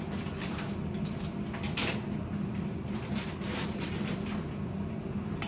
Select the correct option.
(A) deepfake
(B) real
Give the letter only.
B